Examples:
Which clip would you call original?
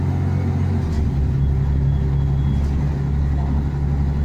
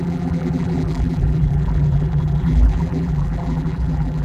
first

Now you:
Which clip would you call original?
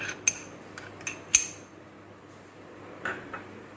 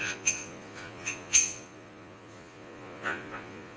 first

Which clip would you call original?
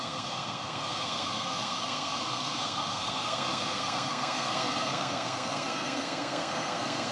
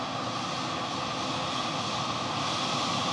second